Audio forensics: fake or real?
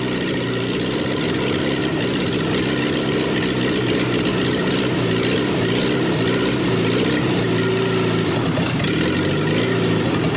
real